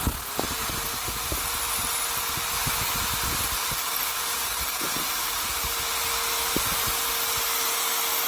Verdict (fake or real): real